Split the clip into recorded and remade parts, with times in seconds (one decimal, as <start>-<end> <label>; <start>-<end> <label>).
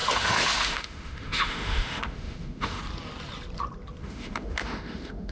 0.0-2.8 remade; 2.8-4.0 recorded; 4.0-5.3 remade